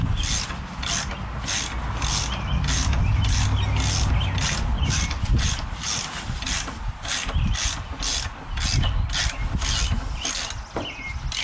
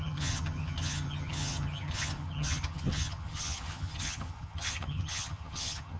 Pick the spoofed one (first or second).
second